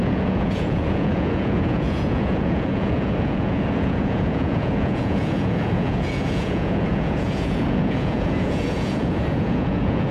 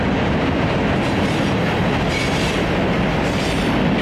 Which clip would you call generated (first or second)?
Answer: first